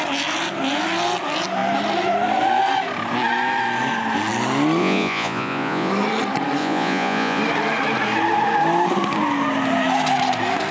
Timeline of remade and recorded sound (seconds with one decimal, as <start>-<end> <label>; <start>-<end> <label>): 0.0-4.8 recorded; 4.8-5.9 remade; 5.9-6.6 recorded; 6.6-7.4 remade; 7.4-10.7 recorded